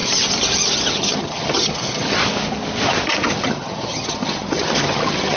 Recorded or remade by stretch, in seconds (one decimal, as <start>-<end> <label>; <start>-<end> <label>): 0.0-0.9 recorded; 0.9-2.2 remade; 2.2-3.3 recorded; 3.3-5.4 remade